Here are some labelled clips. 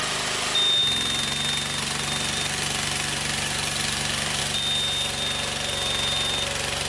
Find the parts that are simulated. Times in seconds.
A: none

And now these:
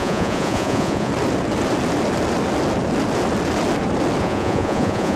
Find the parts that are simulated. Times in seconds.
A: 0.0-1.1; 4.2-5.2

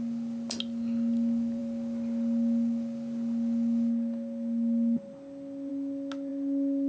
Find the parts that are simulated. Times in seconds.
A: none

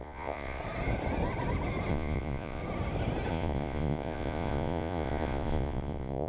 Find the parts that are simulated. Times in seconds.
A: 0.0-0.6; 1.9-2.6; 3.3-6.3